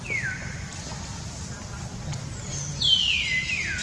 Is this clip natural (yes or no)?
yes